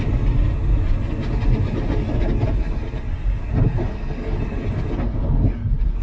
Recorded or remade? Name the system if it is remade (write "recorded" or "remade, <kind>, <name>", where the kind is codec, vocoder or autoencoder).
recorded